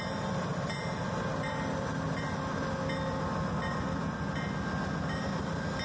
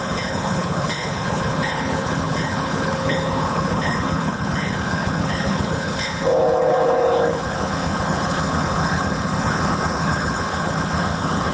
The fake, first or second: second